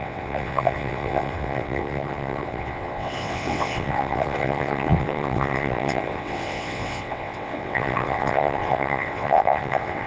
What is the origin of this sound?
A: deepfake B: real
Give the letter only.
A